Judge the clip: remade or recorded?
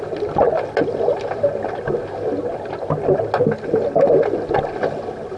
recorded